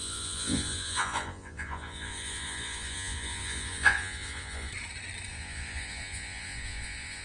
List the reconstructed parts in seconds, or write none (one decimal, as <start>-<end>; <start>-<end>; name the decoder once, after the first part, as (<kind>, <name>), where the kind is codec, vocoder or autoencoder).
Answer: 0.0-4.7 (vocoder, Vocos); 5.3-7.2